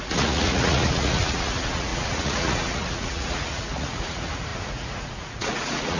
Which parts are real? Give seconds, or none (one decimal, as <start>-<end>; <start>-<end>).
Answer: none